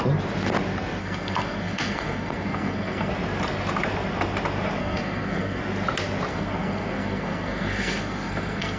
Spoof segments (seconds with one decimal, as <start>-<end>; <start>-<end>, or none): 1.0-3.1; 4.8-5.6; 6.3-8.8